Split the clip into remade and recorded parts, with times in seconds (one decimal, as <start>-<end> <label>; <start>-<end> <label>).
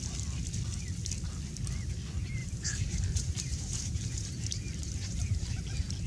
0.0-2.4 recorded; 2.4-5.6 remade; 5.6-6.1 recorded